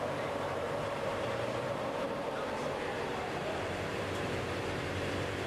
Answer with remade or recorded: remade